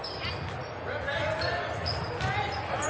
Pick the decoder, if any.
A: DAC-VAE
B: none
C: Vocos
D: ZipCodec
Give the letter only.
B